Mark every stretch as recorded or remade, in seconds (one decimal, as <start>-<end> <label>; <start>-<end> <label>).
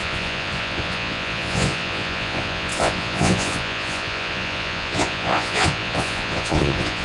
0.0-7.0 remade